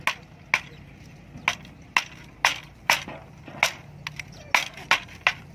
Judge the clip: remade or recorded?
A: recorded